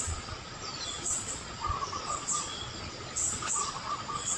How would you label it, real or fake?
fake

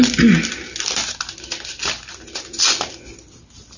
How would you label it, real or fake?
real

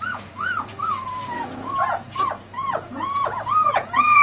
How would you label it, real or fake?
fake